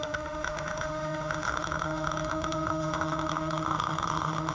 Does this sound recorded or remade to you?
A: remade